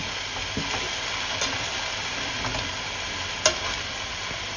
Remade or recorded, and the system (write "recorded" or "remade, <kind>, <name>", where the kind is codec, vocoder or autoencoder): recorded